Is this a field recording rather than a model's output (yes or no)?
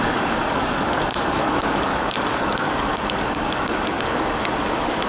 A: no